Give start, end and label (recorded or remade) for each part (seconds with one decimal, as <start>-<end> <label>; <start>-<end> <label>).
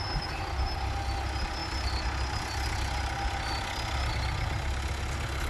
0.0-5.5 recorded